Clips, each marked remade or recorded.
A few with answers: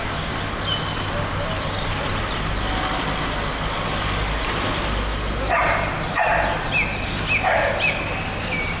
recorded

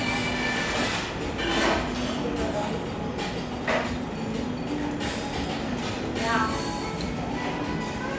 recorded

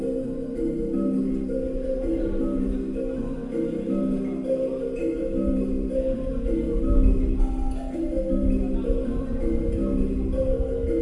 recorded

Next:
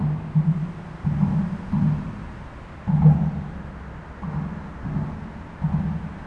recorded